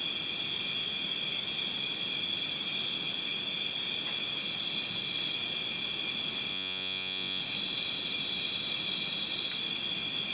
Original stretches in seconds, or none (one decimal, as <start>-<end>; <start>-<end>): 0.0-6.5; 7.4-10.3